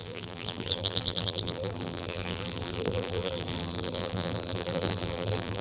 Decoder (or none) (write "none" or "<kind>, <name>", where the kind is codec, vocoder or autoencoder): vocoder, BigVGAN v2